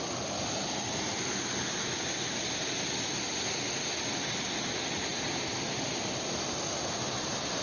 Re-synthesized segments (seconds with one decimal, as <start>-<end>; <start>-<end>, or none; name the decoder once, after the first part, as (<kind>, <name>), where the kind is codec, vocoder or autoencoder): none